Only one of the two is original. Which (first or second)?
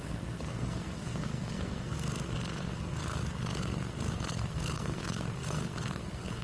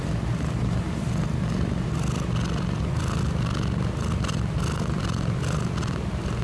second